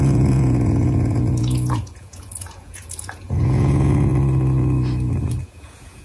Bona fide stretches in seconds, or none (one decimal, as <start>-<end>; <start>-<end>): 4.1-5.4